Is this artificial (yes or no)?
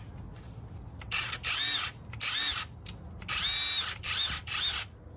no